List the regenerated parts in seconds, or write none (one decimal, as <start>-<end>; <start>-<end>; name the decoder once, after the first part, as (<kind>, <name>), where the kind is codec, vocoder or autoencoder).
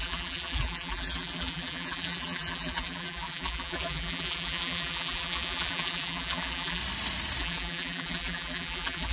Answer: 0.0-6.8 (vocoder, BigVGAN v2); 7.4-9.1